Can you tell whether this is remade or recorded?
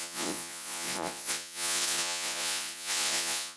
remade